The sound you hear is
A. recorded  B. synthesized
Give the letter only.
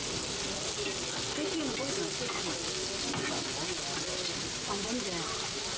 A